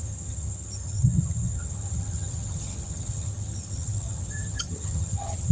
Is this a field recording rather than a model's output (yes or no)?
no